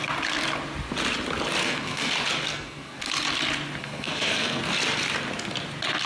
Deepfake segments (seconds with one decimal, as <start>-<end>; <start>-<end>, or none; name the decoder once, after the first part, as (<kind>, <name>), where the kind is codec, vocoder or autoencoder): 1.6-2.1 (codec, SNAC); 2.5-3.0; 3.8-4.6